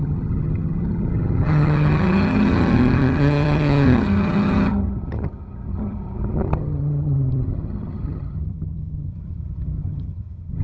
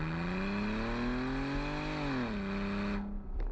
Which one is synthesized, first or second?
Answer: first